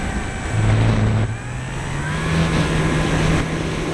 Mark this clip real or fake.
real